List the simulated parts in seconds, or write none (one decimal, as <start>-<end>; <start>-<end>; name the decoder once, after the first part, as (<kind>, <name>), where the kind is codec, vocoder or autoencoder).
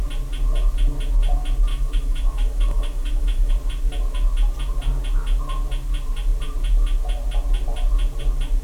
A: 1.7-3.5 (autoencoder, DAC-VAE)